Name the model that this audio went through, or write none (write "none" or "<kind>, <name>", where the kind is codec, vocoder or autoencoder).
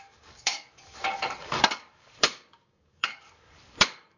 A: codec, DAC